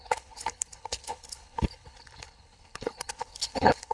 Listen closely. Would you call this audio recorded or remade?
remade